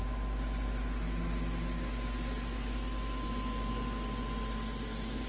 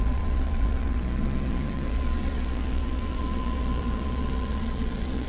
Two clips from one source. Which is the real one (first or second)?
first